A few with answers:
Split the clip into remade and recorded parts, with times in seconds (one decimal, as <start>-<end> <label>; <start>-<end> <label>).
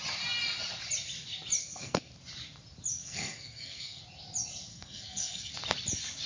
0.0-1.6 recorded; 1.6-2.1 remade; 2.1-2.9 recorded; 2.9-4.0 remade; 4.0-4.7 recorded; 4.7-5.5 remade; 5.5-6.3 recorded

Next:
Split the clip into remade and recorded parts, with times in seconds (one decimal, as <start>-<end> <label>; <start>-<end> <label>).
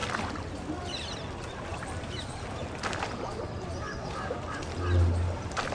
0.0-0.7 remade; 0.7-1.7 recorded; 1.7-4.3 remade; 4.3-5.7 recorded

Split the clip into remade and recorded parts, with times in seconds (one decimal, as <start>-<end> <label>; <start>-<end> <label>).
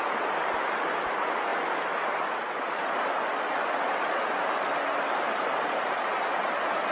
0.0-6.9 recorded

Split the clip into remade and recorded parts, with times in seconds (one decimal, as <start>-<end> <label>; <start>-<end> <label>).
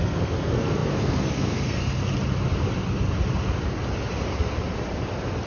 0.0-2.0 remade; 2.0-5.5 recorded